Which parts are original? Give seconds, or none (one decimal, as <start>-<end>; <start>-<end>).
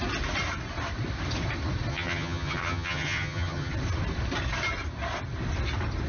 0.0-1.9; 3.7-6.1